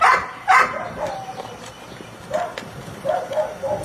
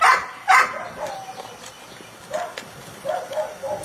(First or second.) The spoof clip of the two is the first